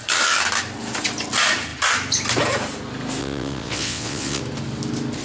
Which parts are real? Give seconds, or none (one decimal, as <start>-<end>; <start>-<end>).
0.0-3.2; 4.4-5.2